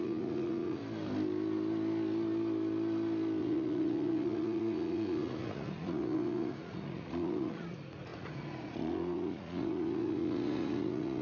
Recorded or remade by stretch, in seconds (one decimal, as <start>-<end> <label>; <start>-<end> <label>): 0.0-0.8 remade; 0.8-3.4 recorded; 3.4-11.2 remade